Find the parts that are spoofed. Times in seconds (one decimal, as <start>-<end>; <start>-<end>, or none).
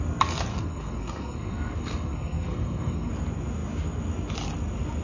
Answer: 0.5-3.1